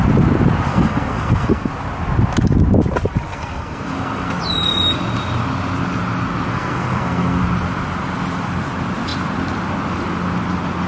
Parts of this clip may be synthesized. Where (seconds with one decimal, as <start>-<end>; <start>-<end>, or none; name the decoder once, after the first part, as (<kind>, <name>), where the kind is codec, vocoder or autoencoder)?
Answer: 0.7-1.7 (codec, SNAC); 3.3-4.4; 6.5-7.4